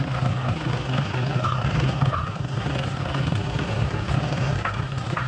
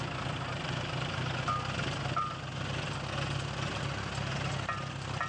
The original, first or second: second